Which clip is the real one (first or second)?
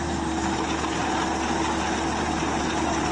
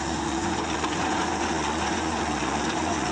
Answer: first